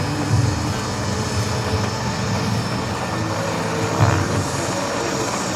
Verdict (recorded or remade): recorded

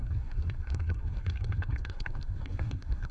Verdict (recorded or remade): remade